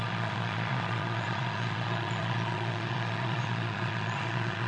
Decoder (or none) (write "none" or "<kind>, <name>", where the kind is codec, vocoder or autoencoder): vocoder, Vocos